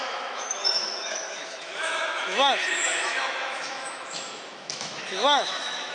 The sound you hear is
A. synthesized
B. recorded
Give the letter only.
A